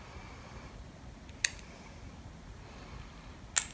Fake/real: real